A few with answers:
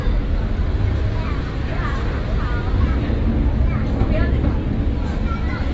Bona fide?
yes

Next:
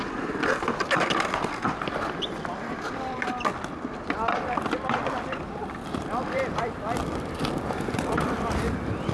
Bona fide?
no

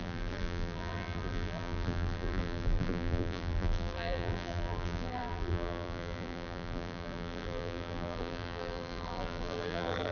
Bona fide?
no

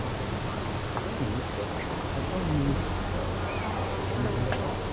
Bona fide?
yes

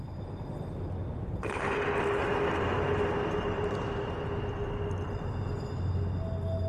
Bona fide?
yes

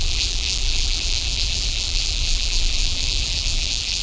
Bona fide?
no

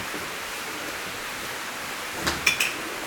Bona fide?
yes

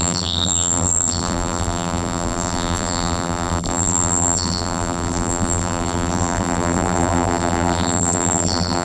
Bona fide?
no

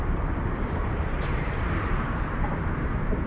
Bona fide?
no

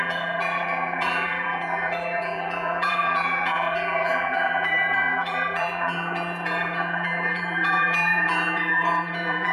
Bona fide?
no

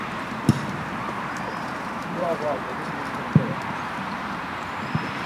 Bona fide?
no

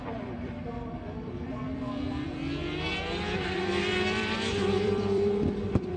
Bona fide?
no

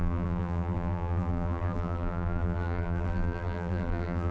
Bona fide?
no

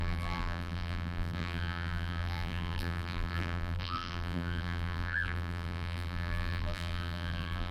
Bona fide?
no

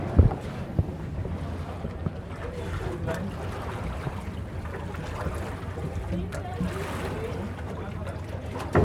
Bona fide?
yes